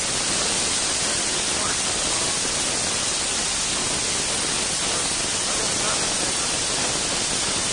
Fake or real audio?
real